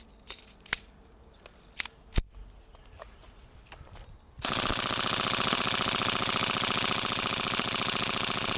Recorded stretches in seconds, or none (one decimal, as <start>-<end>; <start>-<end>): 0.0-8.6